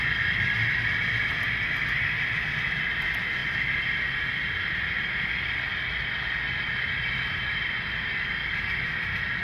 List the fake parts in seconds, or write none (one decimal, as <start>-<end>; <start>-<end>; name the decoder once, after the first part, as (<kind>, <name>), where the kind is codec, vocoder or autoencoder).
none